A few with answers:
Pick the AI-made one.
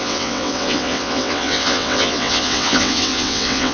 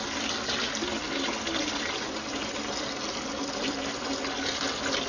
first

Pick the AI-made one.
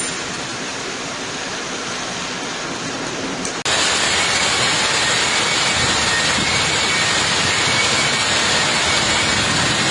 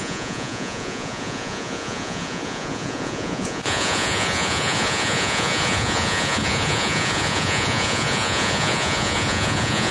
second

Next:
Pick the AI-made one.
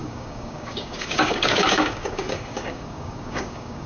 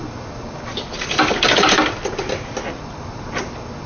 first